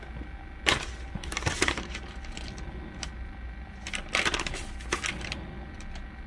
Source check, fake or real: real